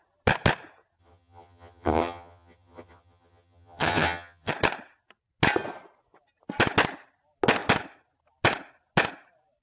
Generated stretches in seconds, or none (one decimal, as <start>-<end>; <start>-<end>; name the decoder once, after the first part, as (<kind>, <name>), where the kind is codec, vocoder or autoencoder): 1.0-4.5 (vocoder, HiFi-GAN)